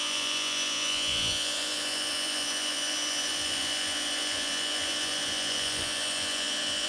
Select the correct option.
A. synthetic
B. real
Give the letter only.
A